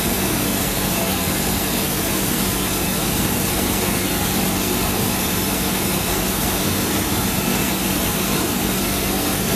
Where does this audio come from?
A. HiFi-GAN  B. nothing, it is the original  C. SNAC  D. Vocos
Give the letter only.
C